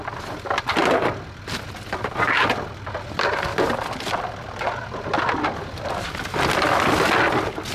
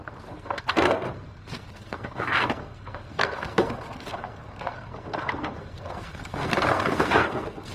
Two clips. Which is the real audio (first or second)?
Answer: first